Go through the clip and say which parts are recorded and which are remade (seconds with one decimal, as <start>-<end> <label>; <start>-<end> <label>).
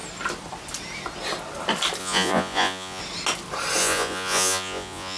0.0-2.0 recorded; 2.0-3.0 remade; 3.0-3.8 recorded; 3.8-5.2 remade